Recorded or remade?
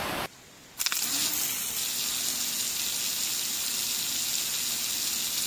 recorded